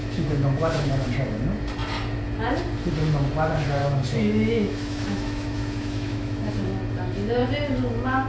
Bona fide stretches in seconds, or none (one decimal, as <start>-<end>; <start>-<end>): 0.9-3.8; 6.5-8.3

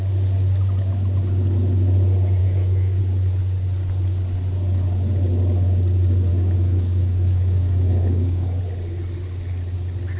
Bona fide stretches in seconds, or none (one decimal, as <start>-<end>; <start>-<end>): 0.0-2.4; 3.0-6.3; 8.6-10.2